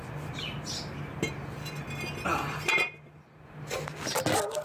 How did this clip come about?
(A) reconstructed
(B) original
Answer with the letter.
B